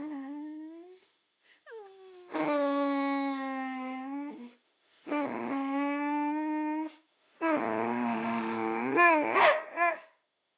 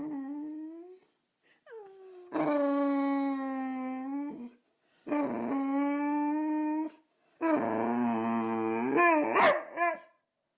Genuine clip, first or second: second